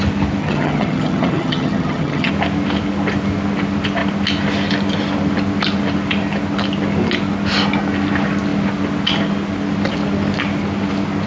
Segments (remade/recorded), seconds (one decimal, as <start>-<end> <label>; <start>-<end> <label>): 0.0-0.4 recorded; 0.4-2.3 remade; 2.3-11.3 recorded